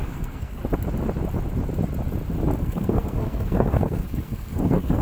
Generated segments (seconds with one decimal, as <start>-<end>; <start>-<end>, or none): 0.0-0.6; 2.6-5.0